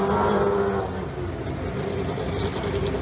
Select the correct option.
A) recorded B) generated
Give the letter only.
A